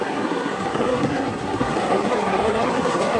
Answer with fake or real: fake